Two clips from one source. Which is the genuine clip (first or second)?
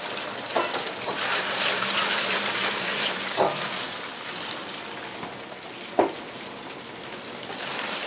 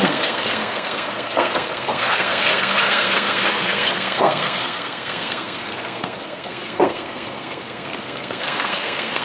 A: first